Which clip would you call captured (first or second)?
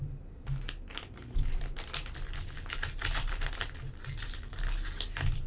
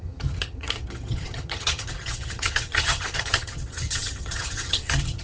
first